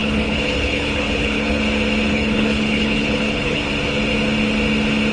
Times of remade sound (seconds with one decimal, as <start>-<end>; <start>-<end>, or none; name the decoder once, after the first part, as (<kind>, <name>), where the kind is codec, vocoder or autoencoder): 0.0-1.6 (codec, HILCodec); 2.1-3.6